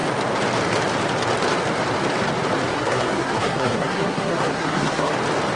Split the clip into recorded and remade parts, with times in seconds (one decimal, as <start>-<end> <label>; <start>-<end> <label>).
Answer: 0.0-2.7 recorded; 2.7-5.1 remade; 5.1-5.6 recorded